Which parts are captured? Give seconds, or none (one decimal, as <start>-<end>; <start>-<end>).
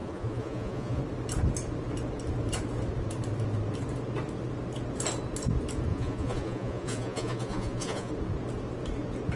1.0-5.9; 8.1-9.4